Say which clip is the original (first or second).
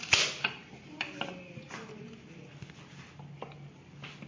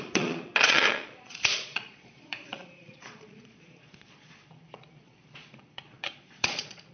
first